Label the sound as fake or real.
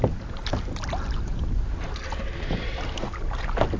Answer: real